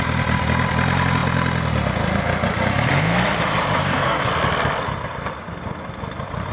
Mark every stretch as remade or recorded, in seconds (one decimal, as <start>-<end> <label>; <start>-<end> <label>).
0.0-3.8 recorded; 3.8-4.3 remade; 4.3-6.5 recorded